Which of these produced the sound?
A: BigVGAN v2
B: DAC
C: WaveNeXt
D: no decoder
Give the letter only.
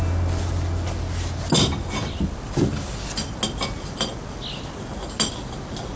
D